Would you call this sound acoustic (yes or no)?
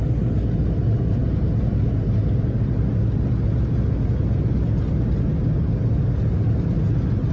yes